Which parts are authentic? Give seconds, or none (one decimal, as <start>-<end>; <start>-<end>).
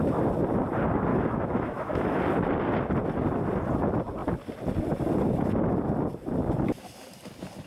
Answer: 0.0-1.1; 2.2-7.7